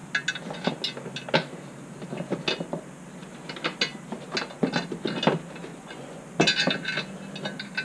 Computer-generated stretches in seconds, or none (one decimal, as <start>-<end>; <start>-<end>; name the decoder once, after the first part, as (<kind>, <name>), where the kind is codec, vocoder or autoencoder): 5.7-6.2 (vocoder, Vocos)